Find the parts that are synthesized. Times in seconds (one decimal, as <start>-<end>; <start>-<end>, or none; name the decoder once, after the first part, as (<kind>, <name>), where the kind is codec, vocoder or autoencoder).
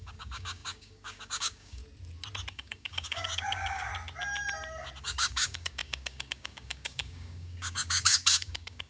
0.0-1.8 (codec, DAC); 2.5-3.9; 5.0-8.9